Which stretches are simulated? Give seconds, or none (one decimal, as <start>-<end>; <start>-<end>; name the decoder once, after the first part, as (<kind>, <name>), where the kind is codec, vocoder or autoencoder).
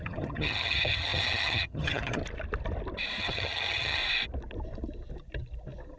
0.0-2.2 (vocoder, HiFi-GAN); 3.2-4.0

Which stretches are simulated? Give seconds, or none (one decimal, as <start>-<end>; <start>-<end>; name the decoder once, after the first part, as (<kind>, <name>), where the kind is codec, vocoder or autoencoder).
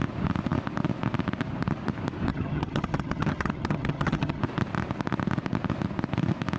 2.3-4.4 (vocoder, HiFi-GAN)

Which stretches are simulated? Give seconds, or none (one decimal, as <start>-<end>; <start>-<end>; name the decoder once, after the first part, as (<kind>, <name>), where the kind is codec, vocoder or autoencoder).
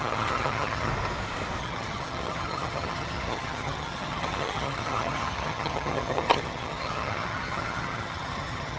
0.0-0.9 (vocoder, HiFi-GAN); 1.6-8.8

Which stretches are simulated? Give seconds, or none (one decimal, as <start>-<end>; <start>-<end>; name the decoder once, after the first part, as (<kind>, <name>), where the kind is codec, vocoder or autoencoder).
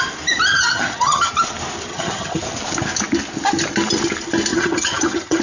0.5-1.3 (vocoder, HiFi-GAN); 1.9-2.4; 4.5-5.4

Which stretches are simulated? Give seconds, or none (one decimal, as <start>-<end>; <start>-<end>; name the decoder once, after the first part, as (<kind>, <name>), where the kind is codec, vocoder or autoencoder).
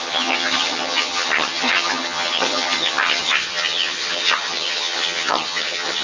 0.0-6.0 (vocoder, HiFi-GAN)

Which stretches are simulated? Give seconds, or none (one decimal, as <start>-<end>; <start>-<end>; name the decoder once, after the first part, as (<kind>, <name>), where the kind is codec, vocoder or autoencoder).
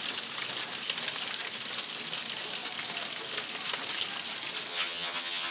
4.7-5.5 (vocoder, HiFi-GAN)